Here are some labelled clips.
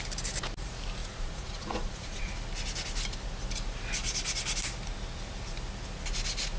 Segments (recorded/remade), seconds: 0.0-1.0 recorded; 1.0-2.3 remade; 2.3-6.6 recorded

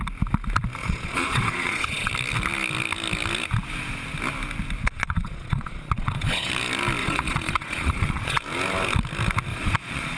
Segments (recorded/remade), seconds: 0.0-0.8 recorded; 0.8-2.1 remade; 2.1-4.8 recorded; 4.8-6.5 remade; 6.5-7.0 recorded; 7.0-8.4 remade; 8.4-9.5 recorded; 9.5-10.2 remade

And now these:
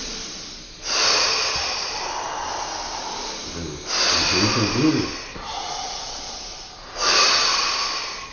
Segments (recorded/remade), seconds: 0.0-5.3 recorded; 5.3-6.4 remade; 6.4-8.3 recorded

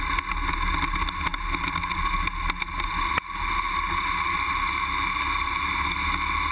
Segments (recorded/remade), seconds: 0.0-6.5 recorded

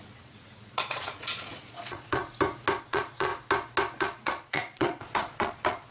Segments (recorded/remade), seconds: 0.0-2.2 remade; 2.2-2.8 recorded; 2.8-3.3 remade; 3.3-4.0 recorded; 4.0-5.9 remade

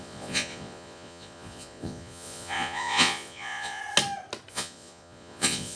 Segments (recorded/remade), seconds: 0.0-3.8 remade; 3.8-4.5 recorded; 4.5-5.8 remade